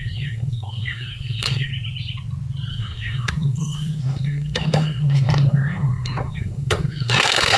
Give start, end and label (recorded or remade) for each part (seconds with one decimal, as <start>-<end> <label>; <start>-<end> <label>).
0.0-1.7 remade; 1.7-2.7 recorded; 2.7-7.6 remade